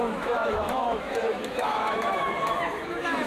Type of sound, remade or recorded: remade